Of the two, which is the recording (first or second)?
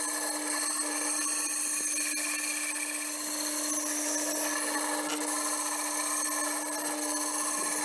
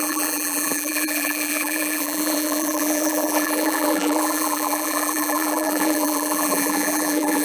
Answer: first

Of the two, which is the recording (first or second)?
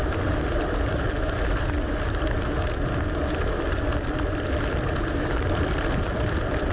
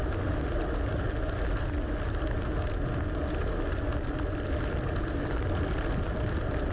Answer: second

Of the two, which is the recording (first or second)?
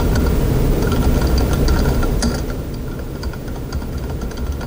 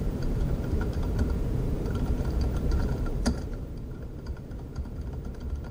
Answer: first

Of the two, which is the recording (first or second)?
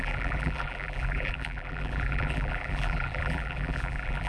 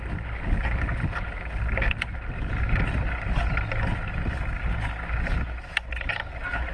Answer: second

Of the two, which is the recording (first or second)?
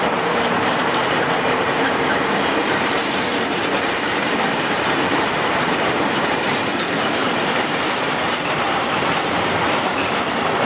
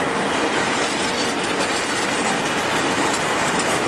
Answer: second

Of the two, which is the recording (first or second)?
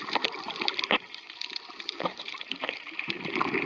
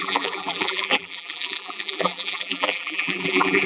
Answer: first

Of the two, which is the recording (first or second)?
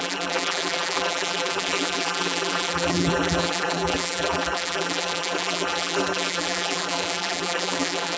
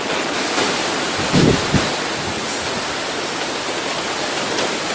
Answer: second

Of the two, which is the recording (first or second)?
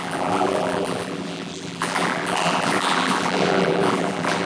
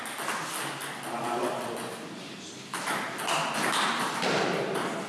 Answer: second